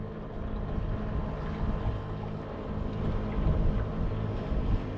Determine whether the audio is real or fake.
real